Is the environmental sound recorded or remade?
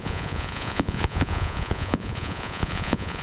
remade